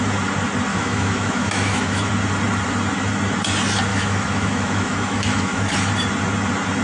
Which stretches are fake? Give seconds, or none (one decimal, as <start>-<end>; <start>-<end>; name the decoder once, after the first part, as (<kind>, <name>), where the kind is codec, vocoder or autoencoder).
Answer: 0.7-2.1 (autoencoder, DAC-VAE); 3.9-5.7